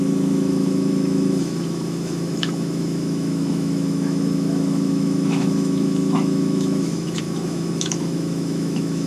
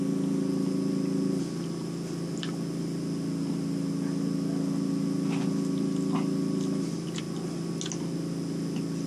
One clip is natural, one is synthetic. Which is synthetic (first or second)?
first